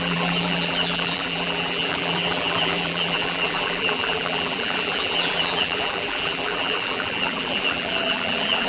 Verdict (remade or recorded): remade